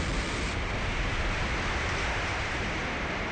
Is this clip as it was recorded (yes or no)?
yes